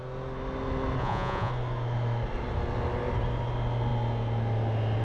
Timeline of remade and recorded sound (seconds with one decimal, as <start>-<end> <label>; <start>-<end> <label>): 0.0-1.0 recorded; 1.0-1.5 remade; 1.5-5.0 recorded